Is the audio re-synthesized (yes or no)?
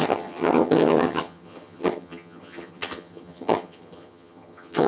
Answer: yes